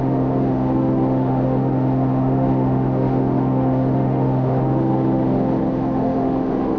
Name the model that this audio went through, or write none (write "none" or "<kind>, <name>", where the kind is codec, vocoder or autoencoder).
autoencoder, DAC-VAE